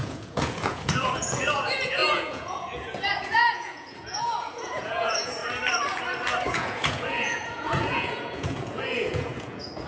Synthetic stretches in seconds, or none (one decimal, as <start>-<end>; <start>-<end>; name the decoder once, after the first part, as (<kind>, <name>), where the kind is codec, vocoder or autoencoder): 0.0-5.4 (vocoder, Vocos); 6.5-9.9